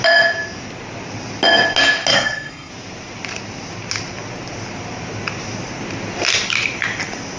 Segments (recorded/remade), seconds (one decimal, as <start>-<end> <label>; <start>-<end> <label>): 0.0-2.1 recorded; 2.1-2.7 remade; 2.7-7.4 recorded